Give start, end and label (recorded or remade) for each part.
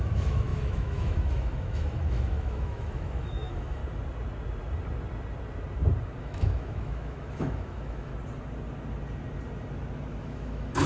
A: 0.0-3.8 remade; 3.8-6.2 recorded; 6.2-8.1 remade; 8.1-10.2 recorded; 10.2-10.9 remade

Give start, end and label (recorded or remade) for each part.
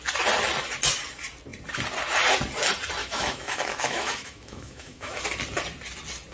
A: 0.0-3.0 recorded; 3.0-5.2 remade; 5.2-6.3 recorded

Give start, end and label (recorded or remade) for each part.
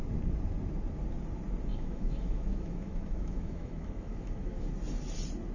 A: 0.0-1.7 recorded; 1.7-4.7 remade; 4.7-5.5 recorded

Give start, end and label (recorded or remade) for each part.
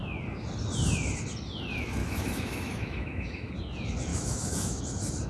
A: 0.0-2.0 recorded; 2.0-3.5 remade; 3.5-4.1 recorded; 4.1-4.8 remade; 4.8-5.3 recorded